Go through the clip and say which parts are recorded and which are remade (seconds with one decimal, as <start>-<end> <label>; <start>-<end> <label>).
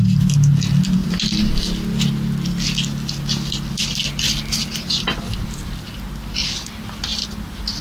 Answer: 0.0-7.8 recorded